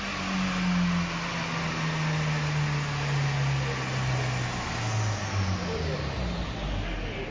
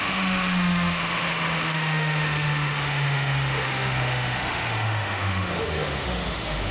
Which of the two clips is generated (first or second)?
second